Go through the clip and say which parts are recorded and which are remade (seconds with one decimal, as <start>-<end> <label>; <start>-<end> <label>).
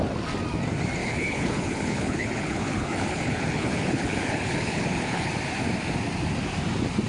0.0-1.0 recorded; 1.0-5.3 remade; 5.3-7.1 recorded